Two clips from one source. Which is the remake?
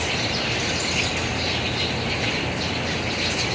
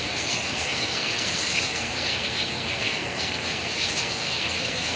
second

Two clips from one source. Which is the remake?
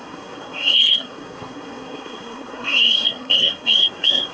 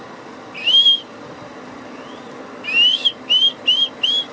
first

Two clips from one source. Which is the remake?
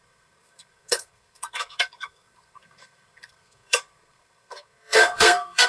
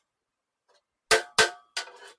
first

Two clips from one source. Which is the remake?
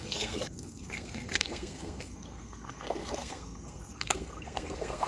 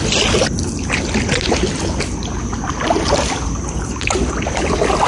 first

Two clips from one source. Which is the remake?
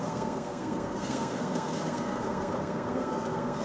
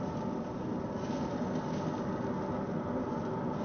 first